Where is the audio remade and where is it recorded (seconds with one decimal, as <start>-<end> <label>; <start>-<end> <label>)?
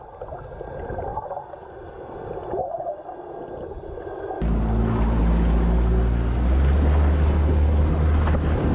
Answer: 0.0-8.7 recorded